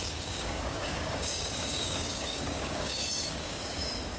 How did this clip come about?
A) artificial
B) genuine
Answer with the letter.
A